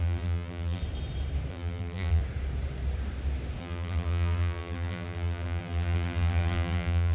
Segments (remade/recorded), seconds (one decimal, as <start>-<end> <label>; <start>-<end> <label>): 0.0-0.8 remade; 0.8-1.5 recorded; 1.5-2.2 remade; 2.2-3.6 recorded; 3.6-7.1 remade